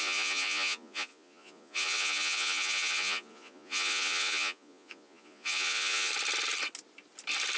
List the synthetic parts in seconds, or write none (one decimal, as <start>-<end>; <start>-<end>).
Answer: 0.0-6.1